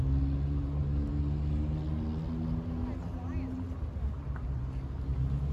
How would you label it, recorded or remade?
recorded